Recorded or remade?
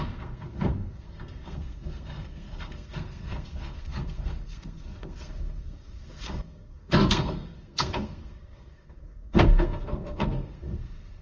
remade